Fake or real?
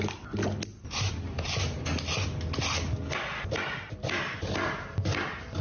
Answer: real